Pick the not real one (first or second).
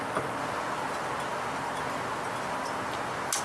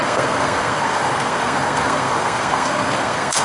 second